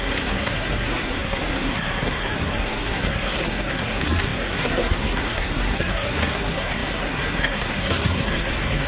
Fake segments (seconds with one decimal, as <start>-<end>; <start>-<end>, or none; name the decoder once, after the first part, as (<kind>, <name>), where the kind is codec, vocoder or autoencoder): 0.0-8.9 (codec, SNAC)